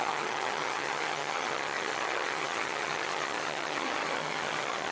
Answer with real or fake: fake